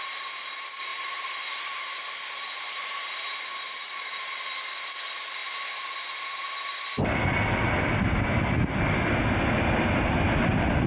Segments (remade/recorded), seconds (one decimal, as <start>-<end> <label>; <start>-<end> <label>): 0.0-0.9 recorded; 0.9-4.6 remade; 4.6-10.9 recorded